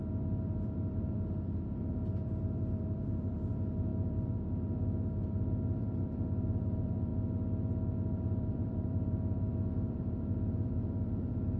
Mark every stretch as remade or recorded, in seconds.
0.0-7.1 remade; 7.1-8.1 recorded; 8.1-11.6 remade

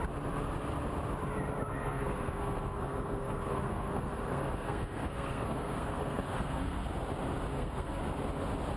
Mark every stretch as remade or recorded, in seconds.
0.0-1.7 recorded; 1.7-6.9 remade; 6.9-7.5 recorded; 7.5-8.0 remade; 8.0-8.8 recorded

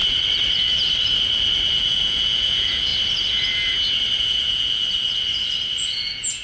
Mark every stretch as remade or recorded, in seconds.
0.0-1.7 recorded; 1.7-2.9 remade; 2.9-4.2 recorded; 4.2-4.8 remade; 4.8-5.8 recorded; 5.8-6.4 remade

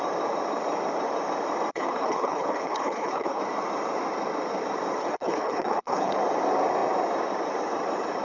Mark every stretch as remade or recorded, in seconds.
0.0-1.7 recorded; 1.7-3.4 remade; 3.4-5.0 recorded; 5.0-6.1 remade; 6.1-8.2 recorded

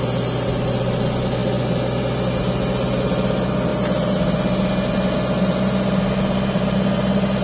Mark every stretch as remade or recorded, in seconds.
0.0-7.4 recorded

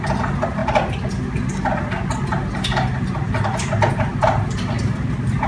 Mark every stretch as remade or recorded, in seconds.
0.0-5.5 recorded

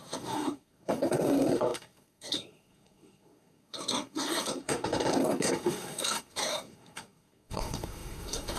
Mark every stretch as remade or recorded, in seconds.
0.0-8.6 remade